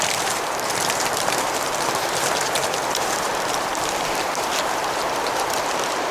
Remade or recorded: remade